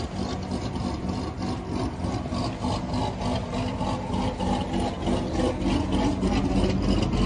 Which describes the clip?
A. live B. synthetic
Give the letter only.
A